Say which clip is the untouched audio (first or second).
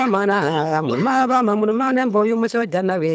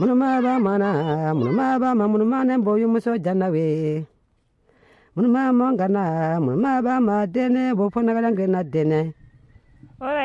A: second